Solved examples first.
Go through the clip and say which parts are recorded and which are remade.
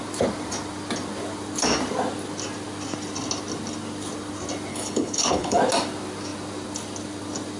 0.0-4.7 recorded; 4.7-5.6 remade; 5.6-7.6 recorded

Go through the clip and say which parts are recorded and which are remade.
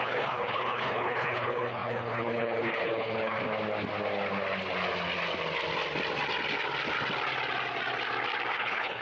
0.0-3.4 remade; 3.4-8.5 recorded; 8.5-9.0 remade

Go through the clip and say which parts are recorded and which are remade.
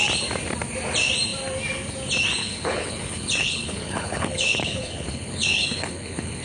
0.0-2.4 recorded; 2.4-6.4 remade